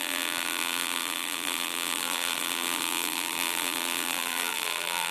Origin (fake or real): fake